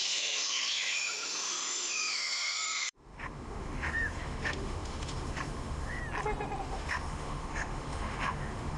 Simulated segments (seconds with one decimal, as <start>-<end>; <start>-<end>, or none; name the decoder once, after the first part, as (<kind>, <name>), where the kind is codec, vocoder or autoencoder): 0.0-6.0 (autoencoder, DAC-VAE); 6.6-8.8

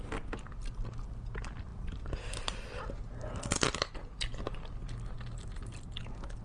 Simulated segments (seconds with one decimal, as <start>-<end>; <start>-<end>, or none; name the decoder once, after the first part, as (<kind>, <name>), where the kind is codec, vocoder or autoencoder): none

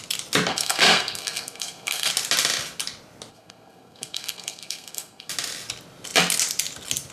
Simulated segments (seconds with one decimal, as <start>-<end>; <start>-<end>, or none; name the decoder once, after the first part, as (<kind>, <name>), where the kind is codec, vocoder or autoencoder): 0.5-2.1 (codec, SNAC); 3.3-5.3

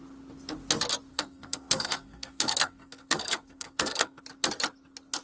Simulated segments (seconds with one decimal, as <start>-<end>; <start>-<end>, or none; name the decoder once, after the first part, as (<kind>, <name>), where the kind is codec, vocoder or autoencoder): 1.1-4.2 (codec, SNAC)

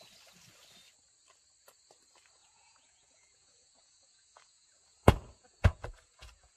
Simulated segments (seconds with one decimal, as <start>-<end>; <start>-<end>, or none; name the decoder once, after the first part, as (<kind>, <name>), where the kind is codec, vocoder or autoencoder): 2.4-6.6 (vocoder, Vocos)